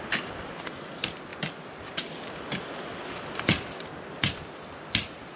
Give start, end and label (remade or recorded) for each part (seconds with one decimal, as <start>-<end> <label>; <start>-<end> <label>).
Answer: 0.0-5.4 recorded